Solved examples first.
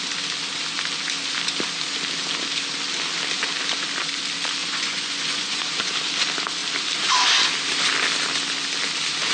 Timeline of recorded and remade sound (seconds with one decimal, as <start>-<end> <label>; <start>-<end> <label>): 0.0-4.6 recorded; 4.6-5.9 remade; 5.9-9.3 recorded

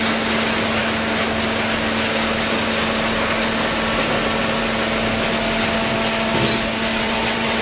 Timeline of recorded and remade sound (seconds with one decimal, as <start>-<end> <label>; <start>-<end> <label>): 0.0-6.9 recorded; 6.9-7.6 remade

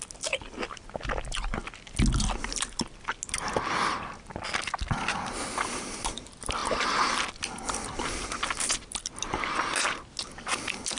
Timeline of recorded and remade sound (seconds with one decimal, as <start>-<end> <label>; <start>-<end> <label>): 0.0-11.0 recorded

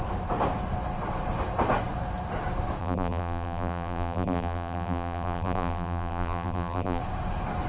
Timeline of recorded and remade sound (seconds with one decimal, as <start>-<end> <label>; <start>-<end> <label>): 0.0-2.8 recorded; 2.8-7.0 remade; 7.0-7.7 recorded

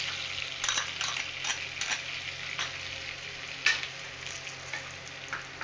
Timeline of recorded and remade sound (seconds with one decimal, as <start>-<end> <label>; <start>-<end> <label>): 0.0-5.6 recorded

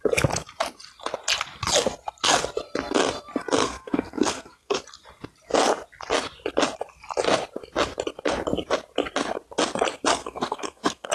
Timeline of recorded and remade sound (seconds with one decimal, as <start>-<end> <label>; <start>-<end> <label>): 0.0-3.6 recorded; 3.6-4.8 remade; 4.8-10.1 recorded; 10.1-11.1 remade

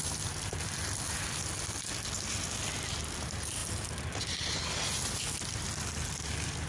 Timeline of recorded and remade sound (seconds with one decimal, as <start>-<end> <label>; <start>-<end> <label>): 0.0-6.7 recorded

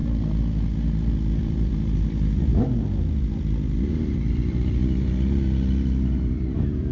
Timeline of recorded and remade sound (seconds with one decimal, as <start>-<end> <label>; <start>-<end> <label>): 0.0-1.4 recorded; 1.4-2.5 remade; 2.5-3.9 recorded; 3.9-4.8 remade; 4.8-6.3 recorded; 6.3-6.9 remade